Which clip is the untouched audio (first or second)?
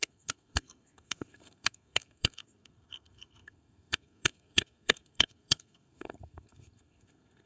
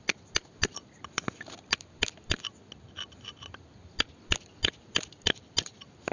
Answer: second